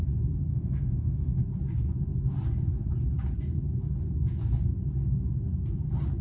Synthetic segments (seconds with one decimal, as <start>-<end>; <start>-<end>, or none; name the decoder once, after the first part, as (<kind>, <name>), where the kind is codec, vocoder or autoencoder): 0.5-1.4 (autoencoder, DAC-VAE)